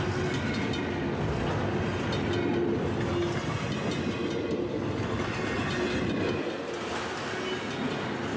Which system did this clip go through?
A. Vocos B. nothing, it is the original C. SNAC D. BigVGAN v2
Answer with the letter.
B